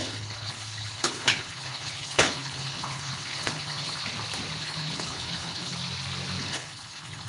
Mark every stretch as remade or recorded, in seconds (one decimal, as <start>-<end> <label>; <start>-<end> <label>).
0.0-4.0 remade; 4.0-4.6 recorded; 4.6-5.7 remade; 5.7-6.4 recorded; 6.4-7.3 remade